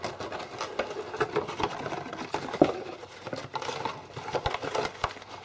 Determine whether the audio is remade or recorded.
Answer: recorded